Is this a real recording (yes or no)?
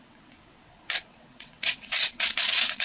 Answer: no